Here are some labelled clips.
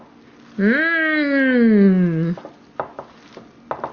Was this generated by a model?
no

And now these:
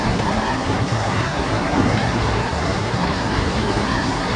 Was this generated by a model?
yes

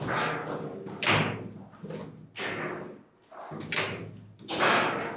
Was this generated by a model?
no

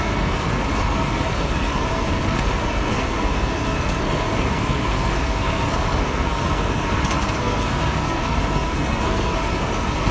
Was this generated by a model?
yes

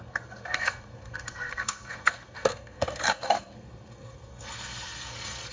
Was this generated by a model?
yes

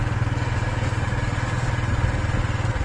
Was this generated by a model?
no